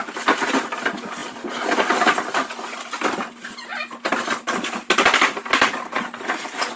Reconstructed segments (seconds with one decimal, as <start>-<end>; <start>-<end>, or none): none